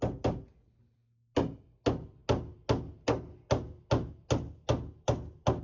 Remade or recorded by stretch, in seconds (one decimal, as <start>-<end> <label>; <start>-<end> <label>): 0.0-5.6 recorded